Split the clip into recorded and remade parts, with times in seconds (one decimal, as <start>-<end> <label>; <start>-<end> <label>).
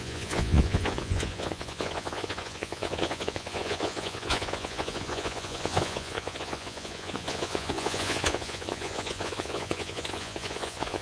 0.0-11.0 remade